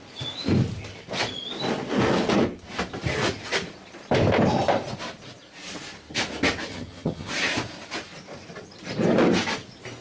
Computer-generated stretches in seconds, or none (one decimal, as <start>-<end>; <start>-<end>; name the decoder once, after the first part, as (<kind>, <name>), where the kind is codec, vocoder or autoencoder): 6.7-7.3 (vocoder, HiFi-GAN)